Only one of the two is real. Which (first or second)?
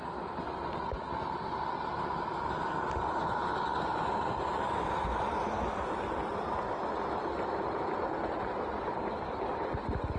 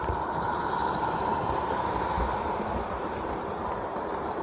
first